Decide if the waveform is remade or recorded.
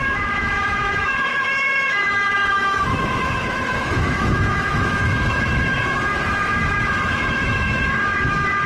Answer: remade